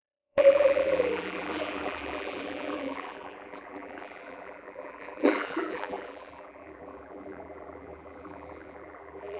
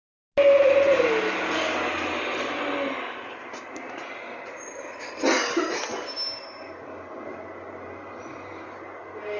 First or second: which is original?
second